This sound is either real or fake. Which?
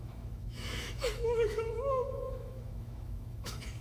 fake